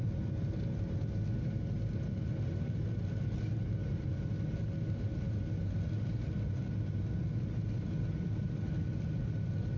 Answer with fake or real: real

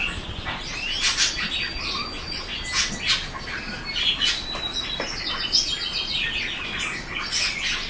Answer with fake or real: real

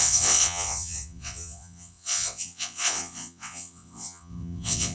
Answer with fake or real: fake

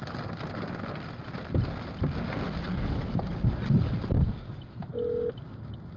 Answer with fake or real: real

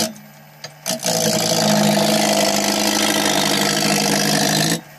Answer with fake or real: real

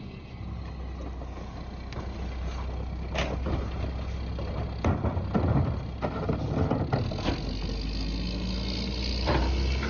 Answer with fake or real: real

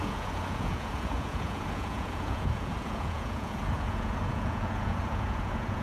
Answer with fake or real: fake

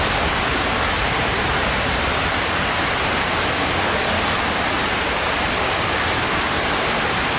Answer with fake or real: real